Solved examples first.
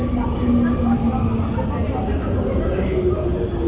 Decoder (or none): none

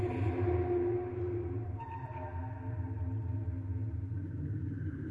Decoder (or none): vocoder, BigVGAN v2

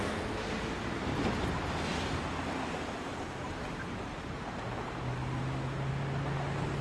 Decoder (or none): none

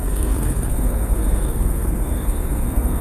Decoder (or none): codec, SNAC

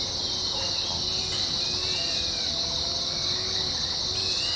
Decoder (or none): none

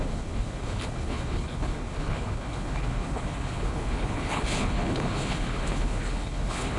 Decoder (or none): codec, HILCodec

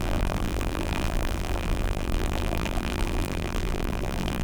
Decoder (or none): vocoder, BigVGAN v2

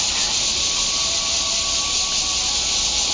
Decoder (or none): none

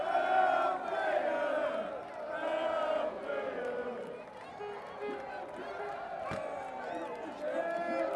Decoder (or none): none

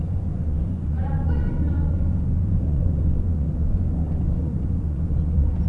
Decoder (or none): vocoder, Vocos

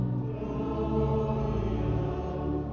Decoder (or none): none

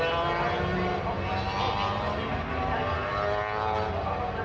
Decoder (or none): none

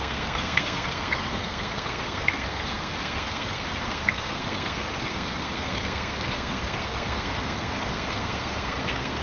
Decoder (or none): codec, SNAC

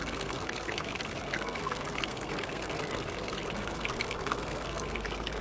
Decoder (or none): codec, SNAC